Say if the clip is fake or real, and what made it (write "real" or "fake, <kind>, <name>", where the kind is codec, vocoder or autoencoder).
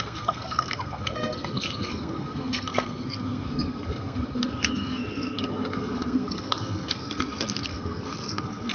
fake, codec, SNAC